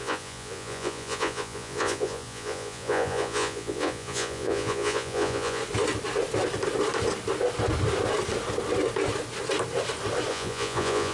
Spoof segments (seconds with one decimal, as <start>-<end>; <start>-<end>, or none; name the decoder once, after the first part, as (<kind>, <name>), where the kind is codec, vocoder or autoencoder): 0.0-5.6 (vocoder, Vocos); 10.3-11.1